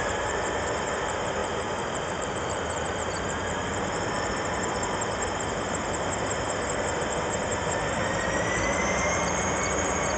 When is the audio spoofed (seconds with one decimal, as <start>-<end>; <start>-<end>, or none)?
0.0-10.2